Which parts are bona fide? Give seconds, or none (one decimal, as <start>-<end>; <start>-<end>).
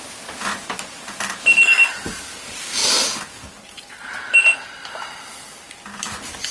0.0-6.5